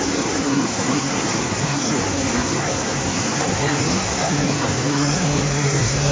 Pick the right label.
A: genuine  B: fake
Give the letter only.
B